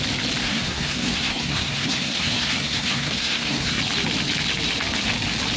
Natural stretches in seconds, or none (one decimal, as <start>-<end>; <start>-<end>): 0.0-0.4; 3.8-5.6